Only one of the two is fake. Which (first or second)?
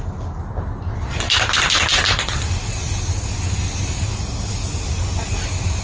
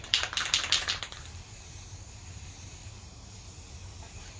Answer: second